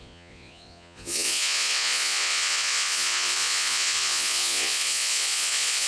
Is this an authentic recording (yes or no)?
no